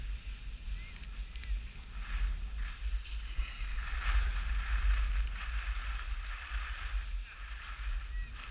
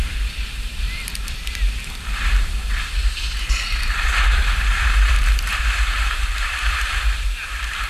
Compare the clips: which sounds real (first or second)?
first